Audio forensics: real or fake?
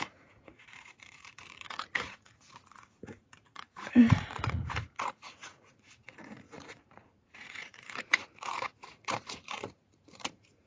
fake